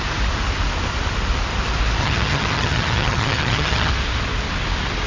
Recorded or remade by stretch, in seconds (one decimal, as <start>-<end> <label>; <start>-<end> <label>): 0.0-2.0 recorded; 2.0-3.9 remade; 3.9-5.1 recorded